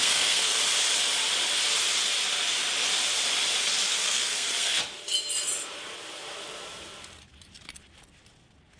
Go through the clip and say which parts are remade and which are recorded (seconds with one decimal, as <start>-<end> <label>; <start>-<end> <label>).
0.0-0.6 remade; 0.6-3.9 recorded; 3.9-4.8 remade; 4.8-8.8 recorded